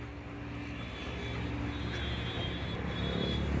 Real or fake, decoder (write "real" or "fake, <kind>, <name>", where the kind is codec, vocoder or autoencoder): real